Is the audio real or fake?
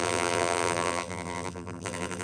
fake